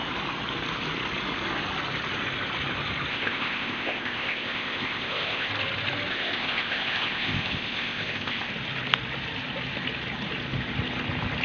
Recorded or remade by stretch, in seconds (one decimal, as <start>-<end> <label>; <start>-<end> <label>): 0.0-3.1 recorded; 3.1-5.5 remade; 5.5-6.1 recorded; 6.1-8.5 remade; 8.5-11.4 recorded